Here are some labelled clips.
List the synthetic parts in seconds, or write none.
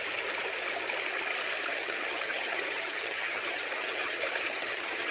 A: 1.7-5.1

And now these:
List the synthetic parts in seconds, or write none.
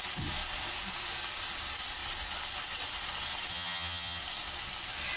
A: 3.5-4.2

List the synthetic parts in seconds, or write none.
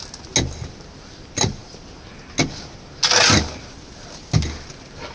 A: none